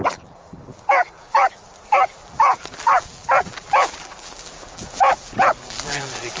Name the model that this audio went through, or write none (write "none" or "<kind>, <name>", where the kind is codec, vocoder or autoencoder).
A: vocoder, BigVGAN v2